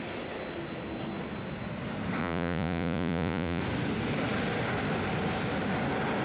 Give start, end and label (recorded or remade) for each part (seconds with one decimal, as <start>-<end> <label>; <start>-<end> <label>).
0.0-2.2 recorded; 2.2-3.6 remade; 3.6-6.2 recorded